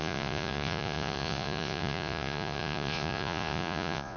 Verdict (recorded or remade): remade